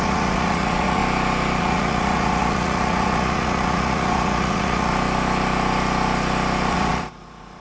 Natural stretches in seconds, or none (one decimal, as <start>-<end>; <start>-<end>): 1.0-1.6; 4.9-6.7